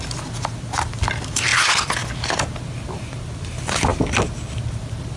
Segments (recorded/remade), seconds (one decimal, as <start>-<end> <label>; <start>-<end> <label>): 0.0-5.2 recorded